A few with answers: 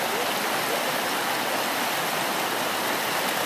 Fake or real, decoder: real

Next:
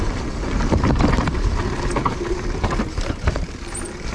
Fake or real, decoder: fake, vocoder, BigVGAN v2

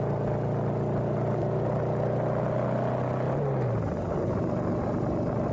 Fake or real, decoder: real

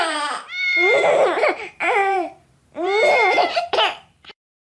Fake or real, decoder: fake, vocoder, BigVGAN v2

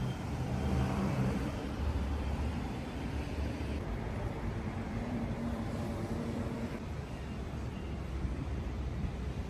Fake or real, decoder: fake, vocoder, BigVGAN v2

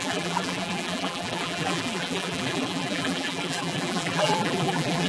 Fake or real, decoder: fake, vocoder, BigVGAN v2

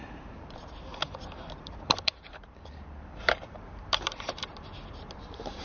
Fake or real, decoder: fake, vocoder, BigVGAN v2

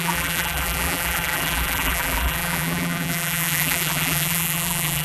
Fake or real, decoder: fake, vocoder, BigVGAN v2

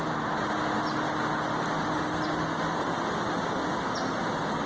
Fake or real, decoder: real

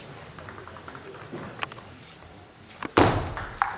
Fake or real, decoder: fake, vocoder, BigVGAN v2